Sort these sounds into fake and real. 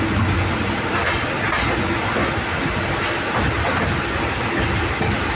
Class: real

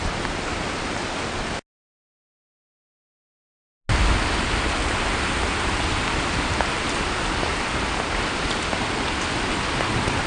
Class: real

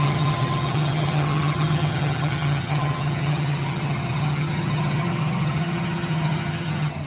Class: fake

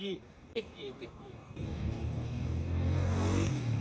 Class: fake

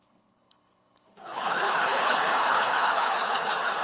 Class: fake